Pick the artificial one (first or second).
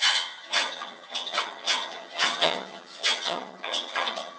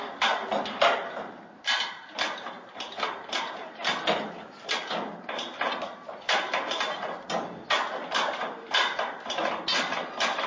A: first